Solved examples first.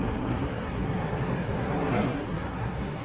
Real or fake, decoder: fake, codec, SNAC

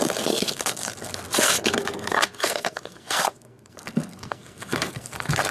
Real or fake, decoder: fake, codec, SNAC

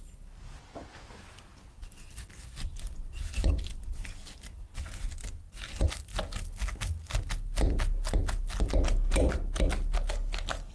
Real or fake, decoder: real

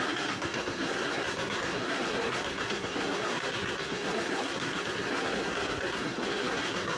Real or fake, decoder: fake, codec, SNAC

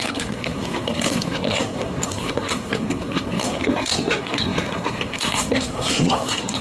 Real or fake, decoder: fake, codec, SNAC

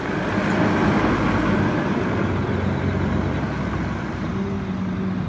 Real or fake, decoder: real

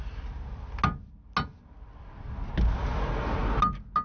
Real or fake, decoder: real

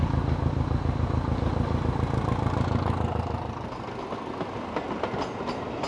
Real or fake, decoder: real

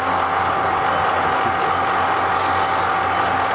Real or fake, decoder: real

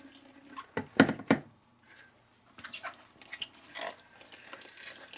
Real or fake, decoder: real